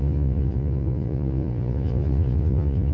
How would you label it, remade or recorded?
remade